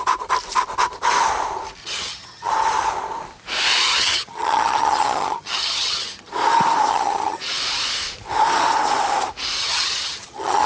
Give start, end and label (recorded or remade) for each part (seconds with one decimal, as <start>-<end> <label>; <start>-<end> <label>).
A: 0.0-1.8 recorded; 1.8-2.5 remade; 2.5-3.9 recorded; 3.9-6.3 remade; 6.3-6.9 recorded; 6.9-7.4 remade; 7.4-9.6 recorded; 9.6-10.7 remade